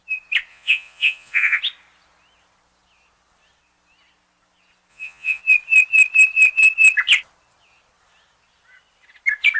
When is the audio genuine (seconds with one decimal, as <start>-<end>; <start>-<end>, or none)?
0.0-0.5; 1.6-4.9; 5.4-9.6